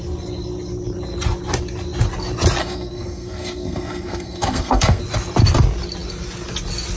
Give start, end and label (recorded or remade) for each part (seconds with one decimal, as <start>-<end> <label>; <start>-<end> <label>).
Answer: 0.0-2.6 recorded; 2.6-5.0 remade; 5.0-7.0 recorded